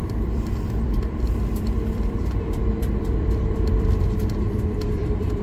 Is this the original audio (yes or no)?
no